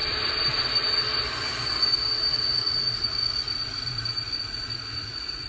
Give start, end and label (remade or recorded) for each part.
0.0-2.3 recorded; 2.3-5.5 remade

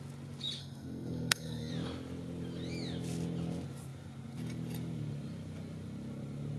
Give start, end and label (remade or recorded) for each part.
0.0-0.6 recorded; 0.6-1.7 remade; 1.7-6.6 recorded

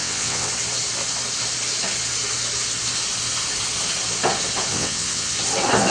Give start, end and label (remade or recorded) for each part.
0.0-0.5 remade; 0.5-4.7 recorded; 4.7-5.3 remade; 5.3-5.9 recorded

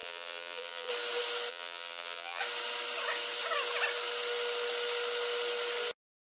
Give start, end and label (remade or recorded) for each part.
0.0-0.9 remade; 0.9-1.5 recorded; 1.5-2.4 remade; 2.4-6.3 recorded

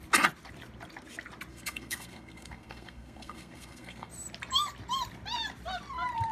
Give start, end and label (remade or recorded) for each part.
0.0-1.5 recorded; 1.5-4.1 remade; 4.1-6.3 recorded

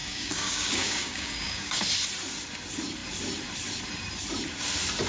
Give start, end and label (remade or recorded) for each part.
0.0-1.8 remade; 1.8-5.1 recorded

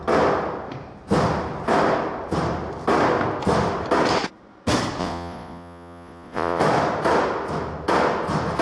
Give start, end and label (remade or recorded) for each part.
0.0-5.0 recorded; 5.0-6.6 remade; 6.6-8.6 recorded